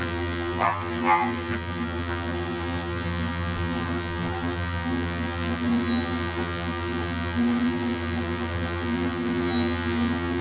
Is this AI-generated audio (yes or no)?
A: yes